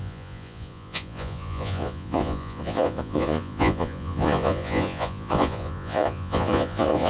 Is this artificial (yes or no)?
yes